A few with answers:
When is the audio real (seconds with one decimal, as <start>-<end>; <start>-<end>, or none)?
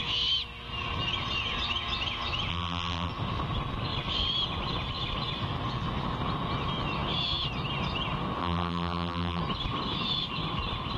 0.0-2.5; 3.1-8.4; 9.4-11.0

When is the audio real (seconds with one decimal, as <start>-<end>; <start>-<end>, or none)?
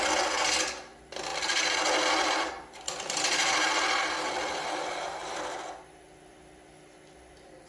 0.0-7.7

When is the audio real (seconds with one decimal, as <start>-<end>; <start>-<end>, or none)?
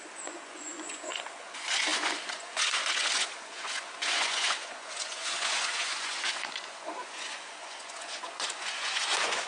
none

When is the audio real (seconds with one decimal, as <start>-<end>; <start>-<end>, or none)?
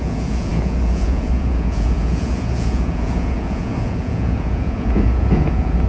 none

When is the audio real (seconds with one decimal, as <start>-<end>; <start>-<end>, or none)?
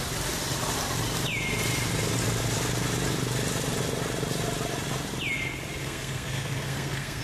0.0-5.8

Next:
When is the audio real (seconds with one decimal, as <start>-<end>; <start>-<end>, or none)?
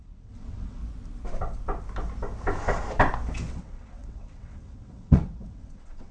0.8-3.5